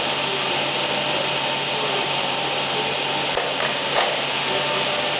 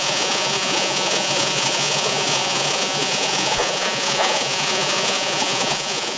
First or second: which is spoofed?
second